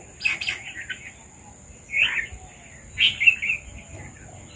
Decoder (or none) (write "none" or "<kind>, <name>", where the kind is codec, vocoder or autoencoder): none